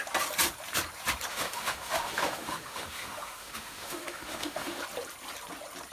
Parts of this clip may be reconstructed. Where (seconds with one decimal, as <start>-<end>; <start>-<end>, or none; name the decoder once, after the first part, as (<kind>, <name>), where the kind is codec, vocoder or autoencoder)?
1.3-4.8 (autoencoder, DAC-VAE)